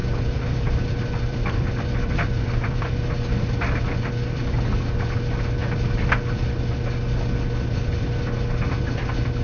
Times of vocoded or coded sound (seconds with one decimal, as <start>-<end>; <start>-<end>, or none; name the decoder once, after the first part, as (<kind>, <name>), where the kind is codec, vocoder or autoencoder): 0.0-3.0 (vocoder, BigVGAN v2)